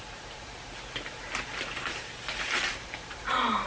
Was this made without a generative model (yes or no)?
no